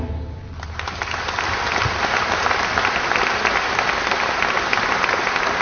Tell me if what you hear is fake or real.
real